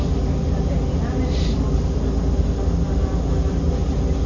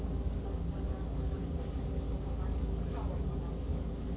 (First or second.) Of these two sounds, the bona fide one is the first